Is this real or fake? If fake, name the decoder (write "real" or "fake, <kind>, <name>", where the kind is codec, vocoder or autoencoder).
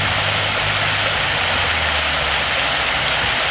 real